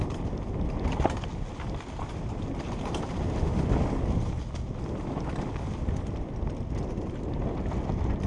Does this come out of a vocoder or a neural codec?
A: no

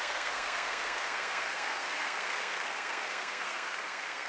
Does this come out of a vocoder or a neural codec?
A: yes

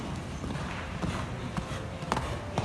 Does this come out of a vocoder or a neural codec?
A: no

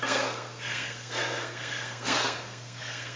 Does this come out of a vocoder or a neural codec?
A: yes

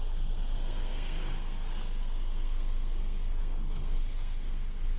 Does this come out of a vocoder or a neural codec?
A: yes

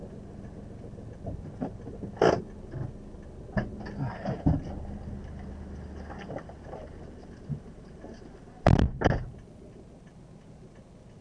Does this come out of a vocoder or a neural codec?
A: no